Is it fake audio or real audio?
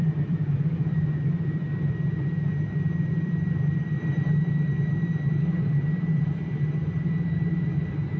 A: fake